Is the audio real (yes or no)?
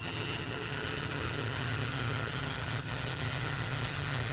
no